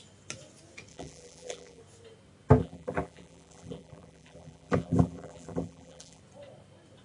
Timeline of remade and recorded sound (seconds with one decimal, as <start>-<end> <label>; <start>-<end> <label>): 0.0-0.9 recorded; 0.9-1.8 remade; 1.8-2.6 recorded; 2.6-6.2 remade; 6.2-7.0 recorded